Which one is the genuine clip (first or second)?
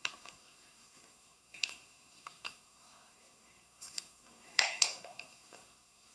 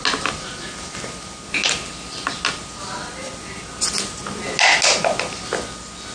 second